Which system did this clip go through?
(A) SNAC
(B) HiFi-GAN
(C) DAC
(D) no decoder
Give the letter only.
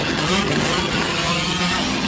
B